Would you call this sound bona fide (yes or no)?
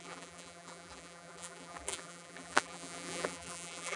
no